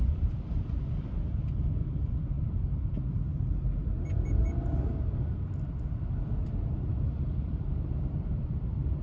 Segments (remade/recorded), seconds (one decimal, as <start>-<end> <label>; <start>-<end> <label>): 0.0-1.8 remade; 1.8-2.5 recorded; 2.5-3.3 remade; 3.3-7.0 recorded; 7.0-9.0 remade